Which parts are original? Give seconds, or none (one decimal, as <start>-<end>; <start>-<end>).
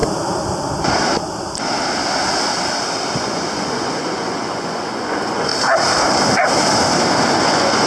0.0-3.2; 5.5-7.4